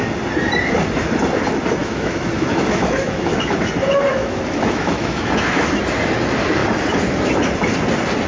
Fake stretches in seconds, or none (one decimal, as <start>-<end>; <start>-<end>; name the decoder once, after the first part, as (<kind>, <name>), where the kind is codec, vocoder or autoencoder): 1.8-3.5 (autoencoder, DAC-VAE); 4.2-5.8